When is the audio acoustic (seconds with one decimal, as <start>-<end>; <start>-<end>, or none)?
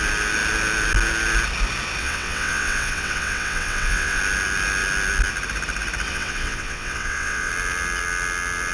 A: 0.0-2.0; 4.2-6.1; 7.5-8.7